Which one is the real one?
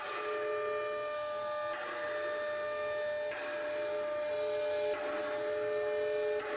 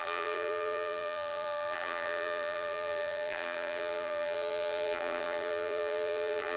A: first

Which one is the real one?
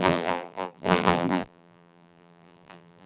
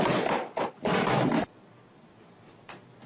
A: second